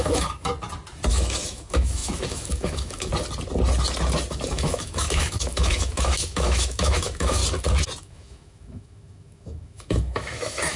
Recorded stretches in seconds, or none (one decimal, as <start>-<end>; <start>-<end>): 0.5-1.1; 3.1-4.3; 7.4-8.0